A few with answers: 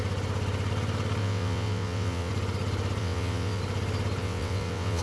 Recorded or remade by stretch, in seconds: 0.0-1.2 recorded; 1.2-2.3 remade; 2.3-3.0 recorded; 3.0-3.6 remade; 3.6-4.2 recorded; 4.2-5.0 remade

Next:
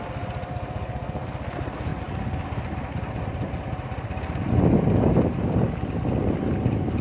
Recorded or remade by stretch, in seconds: 0.0-7.0 recorded

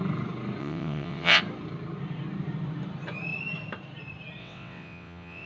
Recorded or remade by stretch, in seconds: 0.0-0.6 recorded; 0.6-1.4 remade; 1.4-4.4 recorded; 4.4-5.5 remade

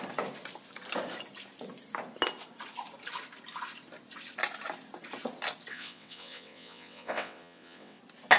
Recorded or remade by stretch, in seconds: 0.0-5.7 recorded; 5.7-8.0 remade; 8.0-8.4 recorded

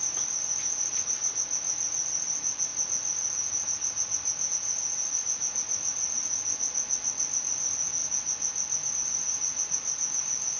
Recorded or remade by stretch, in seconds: 0.0-10.6 recorded